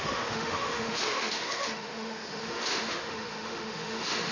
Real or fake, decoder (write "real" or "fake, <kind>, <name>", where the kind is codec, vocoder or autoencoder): fake, autoencoder, DAC-VAE